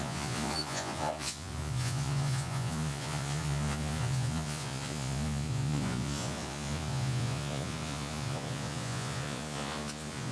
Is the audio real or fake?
fake